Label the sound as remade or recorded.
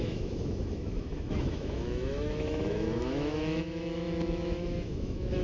remade